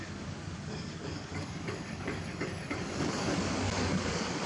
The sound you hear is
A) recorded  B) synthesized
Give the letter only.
B